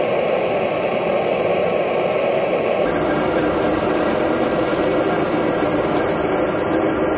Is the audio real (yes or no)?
yes